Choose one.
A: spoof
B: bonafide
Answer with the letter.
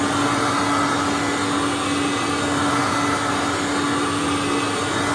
B